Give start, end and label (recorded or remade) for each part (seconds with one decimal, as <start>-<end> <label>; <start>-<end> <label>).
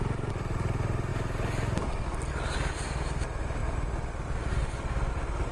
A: 0.0-3.6 recorded; 3.6-5.1 remade; 5.1-5.5 recorded